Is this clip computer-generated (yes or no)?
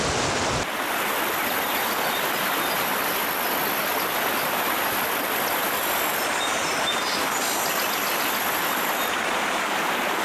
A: no